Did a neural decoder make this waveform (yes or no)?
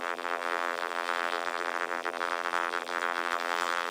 yes